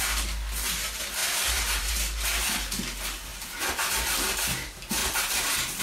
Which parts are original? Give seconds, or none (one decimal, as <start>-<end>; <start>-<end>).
0.0-1.2; 1.9-5.8